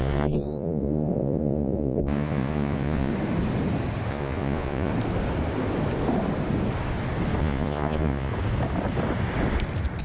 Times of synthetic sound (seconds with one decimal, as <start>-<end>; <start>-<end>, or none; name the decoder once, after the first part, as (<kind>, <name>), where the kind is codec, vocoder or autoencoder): 0.0-3.1 (vocoder, Vocos); 4.1-4.9; 7.4-8.3